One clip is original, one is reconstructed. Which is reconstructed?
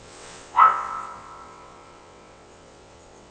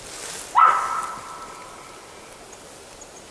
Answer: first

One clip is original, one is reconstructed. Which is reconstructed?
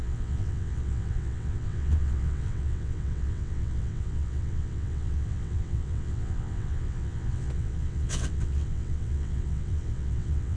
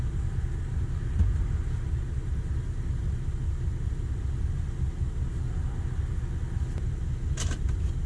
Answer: first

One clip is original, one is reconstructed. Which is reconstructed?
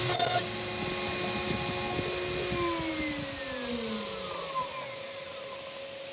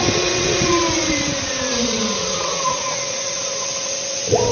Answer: second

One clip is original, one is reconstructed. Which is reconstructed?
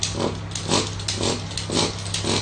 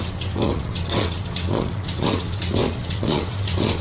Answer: second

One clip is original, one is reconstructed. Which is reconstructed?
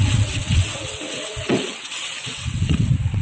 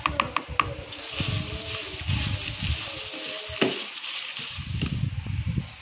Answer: first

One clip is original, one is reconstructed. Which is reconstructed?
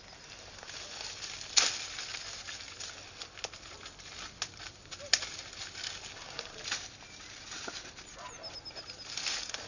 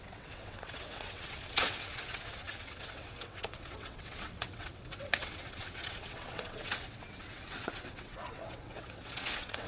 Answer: second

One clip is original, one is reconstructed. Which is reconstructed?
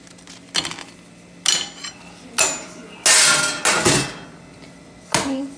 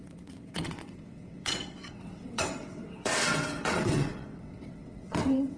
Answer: second